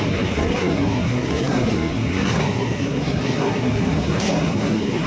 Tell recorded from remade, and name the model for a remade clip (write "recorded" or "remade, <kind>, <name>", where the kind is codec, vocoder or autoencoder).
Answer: remade, codec, SNAC